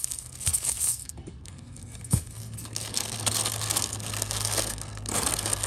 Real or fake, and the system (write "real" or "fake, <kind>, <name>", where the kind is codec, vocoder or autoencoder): fake, codec, SNAC